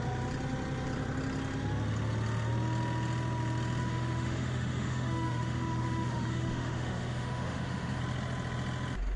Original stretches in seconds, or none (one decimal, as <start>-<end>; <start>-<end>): 0.0-3.8; 8.0-9.2